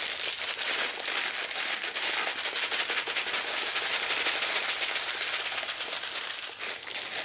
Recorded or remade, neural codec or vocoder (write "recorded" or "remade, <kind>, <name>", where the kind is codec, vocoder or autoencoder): recorded